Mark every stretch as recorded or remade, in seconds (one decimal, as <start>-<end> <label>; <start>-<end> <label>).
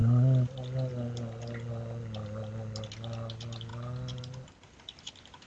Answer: 0.0-3.7 recorded; 3.7-5.1 remade; 5.1-5.5 recorded